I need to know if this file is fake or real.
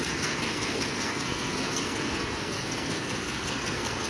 fake